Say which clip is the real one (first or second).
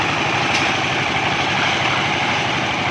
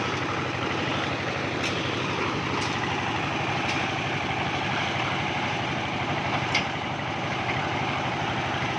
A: second